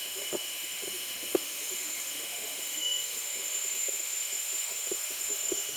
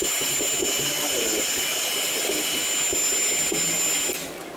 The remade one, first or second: first